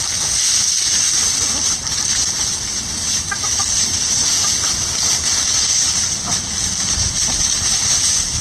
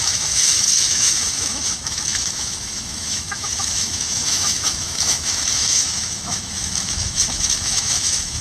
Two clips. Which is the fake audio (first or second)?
second